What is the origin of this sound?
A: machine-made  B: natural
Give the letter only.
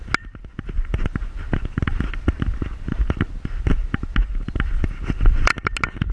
B